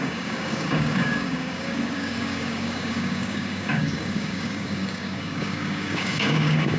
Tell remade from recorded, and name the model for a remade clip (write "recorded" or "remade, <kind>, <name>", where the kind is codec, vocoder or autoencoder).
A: remade, codec, DAC